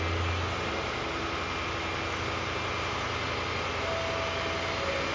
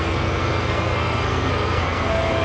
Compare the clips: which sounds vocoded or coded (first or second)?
second